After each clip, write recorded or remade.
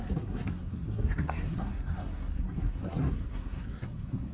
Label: remade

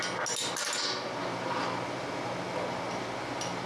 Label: recorded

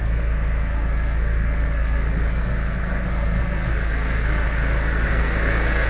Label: remade